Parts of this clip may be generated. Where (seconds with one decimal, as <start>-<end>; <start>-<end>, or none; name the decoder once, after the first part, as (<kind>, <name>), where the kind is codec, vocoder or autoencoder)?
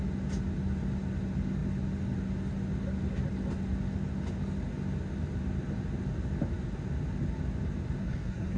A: 8.0-8.6 (codec, SNAC)